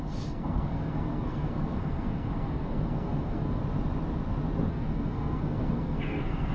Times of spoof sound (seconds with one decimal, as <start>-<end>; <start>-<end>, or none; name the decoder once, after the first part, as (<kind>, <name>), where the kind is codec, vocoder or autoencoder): 0.0-3.6 (codec, SNAC); 4.7-6.5